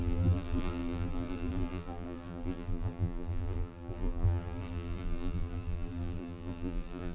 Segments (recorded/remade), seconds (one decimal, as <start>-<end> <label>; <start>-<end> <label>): 0.0-7.1 remade